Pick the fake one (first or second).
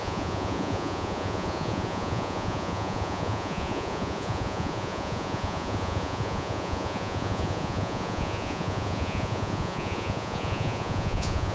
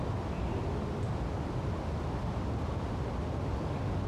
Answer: first